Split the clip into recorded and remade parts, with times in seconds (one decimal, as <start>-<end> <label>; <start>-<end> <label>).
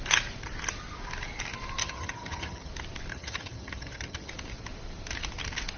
0.0-1.8 recorded; 1.8-2.7 remade; 2.7-3.1 recorded; 3.1-4.3 remade; 4.3-5.8 recorded